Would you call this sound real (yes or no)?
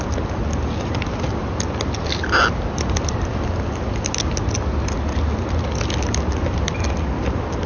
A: yes